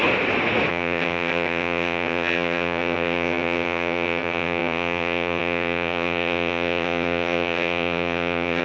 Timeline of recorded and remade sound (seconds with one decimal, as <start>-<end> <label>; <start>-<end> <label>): 0.0-0.7 recorded; 0.7-8.6 remade

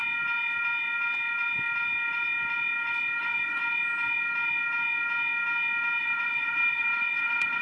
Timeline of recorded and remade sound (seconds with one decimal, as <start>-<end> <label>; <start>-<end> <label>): 0.0-3.2 recorded; 3.2-3.6 remade; 3.6-6.0 recorded; 6.0-7.6 remade

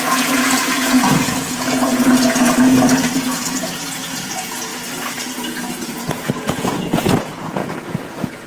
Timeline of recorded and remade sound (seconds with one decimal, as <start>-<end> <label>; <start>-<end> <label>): 0.0-4.7 remade; 4.7-5.3 recorded; 5.3-8.5 remade